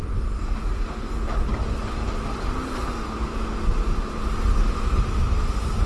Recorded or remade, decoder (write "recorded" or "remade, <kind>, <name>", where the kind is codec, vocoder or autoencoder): recorded